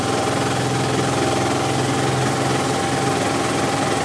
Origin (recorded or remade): recorded